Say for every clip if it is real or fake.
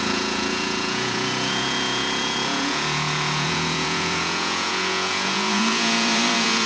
fake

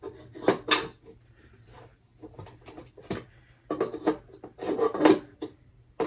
real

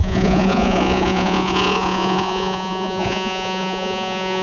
fake